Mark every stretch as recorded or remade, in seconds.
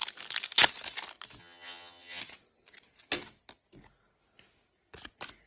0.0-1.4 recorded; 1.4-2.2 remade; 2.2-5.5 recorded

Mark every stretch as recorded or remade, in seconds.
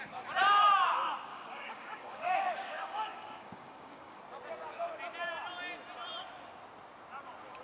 0.0-1.3 recorded; 1.3-4.2 remade; 4.2-7.6 recorded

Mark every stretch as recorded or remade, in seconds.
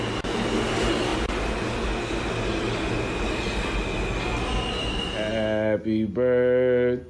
0.0-7.1 recorded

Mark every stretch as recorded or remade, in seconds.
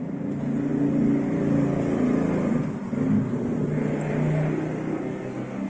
0.0-4.9 recorded; 4.9-5.7 remade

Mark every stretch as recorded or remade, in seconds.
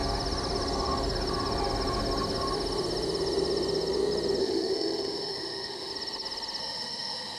0.0-4.4 recorded; 4.4-5.9 remade; 5.9-6.6 recorded; 6.6-7.4 remade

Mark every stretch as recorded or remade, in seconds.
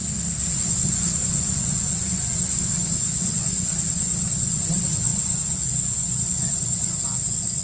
0.0-0.5 recorded; 0.5-7.6 remade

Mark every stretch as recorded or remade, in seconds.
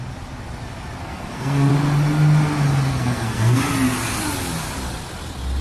0.0-1.0 recorded; 1.0-1.7 remade; 1.7-2.9 recorded; 2.9-3.6 remade; 3.6-5.6 recorded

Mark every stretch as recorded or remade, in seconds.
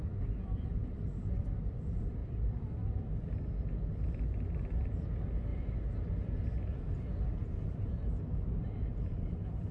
0.0-5.5 remade; 5.5-7.7 recorded; 7.7-9.7 remade